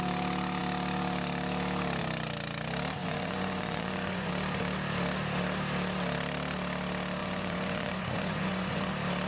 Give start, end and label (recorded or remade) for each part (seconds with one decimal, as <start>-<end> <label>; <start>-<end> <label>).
0.0-3.0 recorded; 3.0-4.3 remade; 4.3-7.2 recorded; 7.2-8.9 remade; 8.9-9.3 recorded